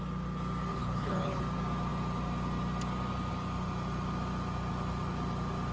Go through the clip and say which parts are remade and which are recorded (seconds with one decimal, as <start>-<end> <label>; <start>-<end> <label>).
0.0-0.7 recorded; 0.7-1.4 remade; 1.4-5.7 recorded